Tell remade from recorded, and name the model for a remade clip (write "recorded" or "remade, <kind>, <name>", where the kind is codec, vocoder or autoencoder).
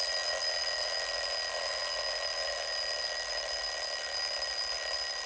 recorded